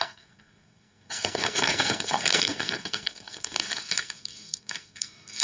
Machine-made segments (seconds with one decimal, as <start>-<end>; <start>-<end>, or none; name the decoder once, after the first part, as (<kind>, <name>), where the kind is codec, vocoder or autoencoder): 0.0-5.4 (codec, SNAC)